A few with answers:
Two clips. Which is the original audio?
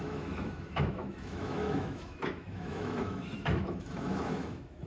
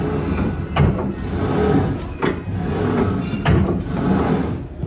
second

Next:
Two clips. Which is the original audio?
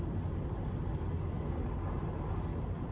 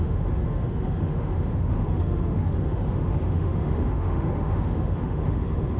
first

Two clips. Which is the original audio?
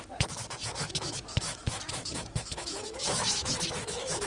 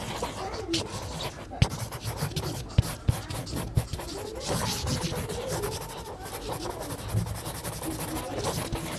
second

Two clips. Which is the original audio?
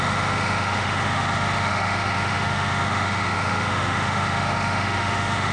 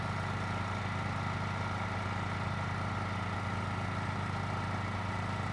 second